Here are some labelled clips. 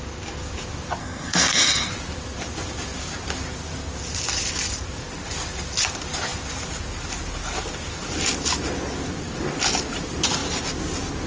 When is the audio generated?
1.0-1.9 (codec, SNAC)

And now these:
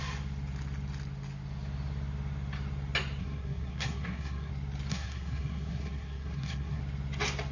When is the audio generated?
3.2-4.5 (codec, SNAC); 4.9-6.8

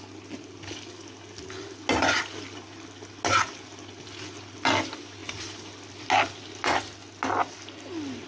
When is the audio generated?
none

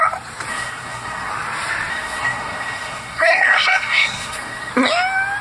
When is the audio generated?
0.5-1.3 (codec, SNAC); 1.9-4.7

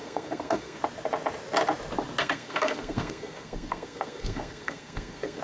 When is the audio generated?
0.0-0.8 (codec, SNAC); 2.2-5.4

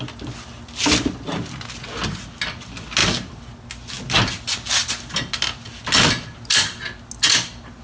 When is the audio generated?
none

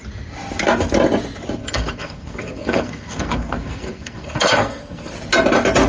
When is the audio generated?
1.6-5.1 (codec, SNAC)